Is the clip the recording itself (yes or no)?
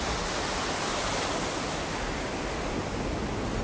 yes